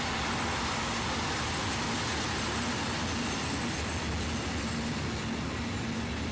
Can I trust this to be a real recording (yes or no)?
yes